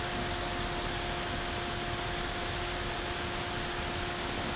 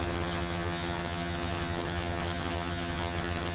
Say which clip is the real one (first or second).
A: first